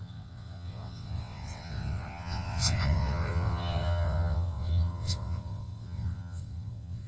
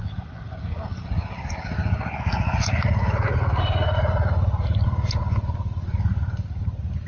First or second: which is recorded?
second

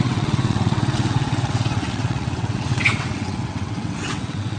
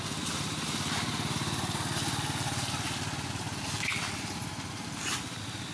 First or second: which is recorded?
second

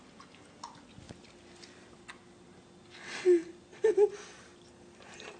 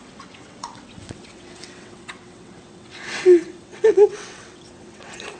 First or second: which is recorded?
first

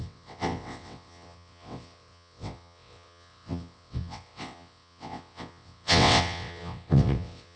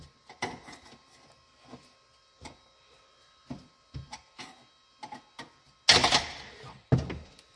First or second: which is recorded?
second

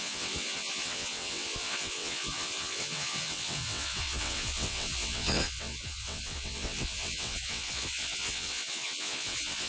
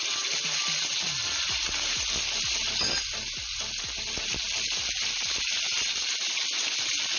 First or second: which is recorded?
second